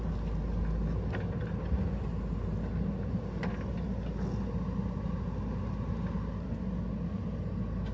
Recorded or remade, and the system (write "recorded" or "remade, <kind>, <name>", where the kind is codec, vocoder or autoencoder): recorded